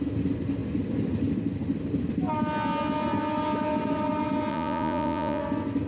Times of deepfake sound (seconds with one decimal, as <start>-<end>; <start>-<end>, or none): 4.5-5.4